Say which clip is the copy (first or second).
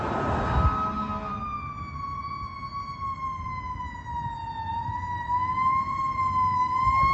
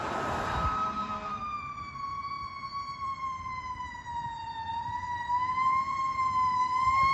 second